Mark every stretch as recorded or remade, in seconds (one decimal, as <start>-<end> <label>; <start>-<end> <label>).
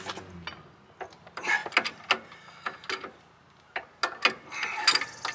0.0-5.3 recorded